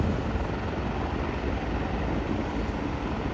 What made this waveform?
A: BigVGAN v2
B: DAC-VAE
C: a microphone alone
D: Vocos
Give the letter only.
C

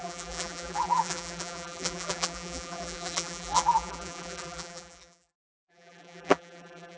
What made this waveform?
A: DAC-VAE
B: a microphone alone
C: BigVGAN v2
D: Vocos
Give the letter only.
C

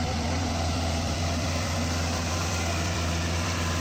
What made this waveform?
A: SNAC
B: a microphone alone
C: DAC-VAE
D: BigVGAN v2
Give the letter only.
D